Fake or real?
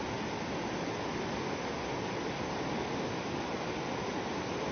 real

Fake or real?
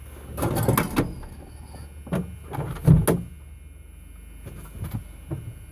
real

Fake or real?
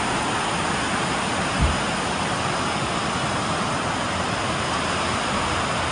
real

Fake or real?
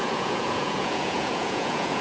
fake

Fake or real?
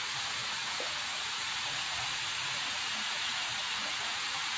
fake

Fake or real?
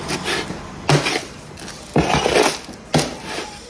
real